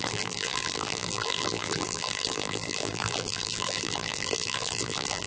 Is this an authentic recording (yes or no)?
no